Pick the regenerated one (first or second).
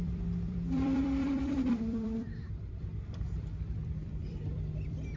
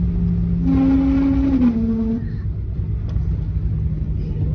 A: first